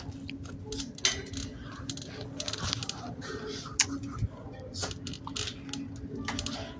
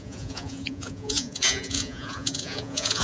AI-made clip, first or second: second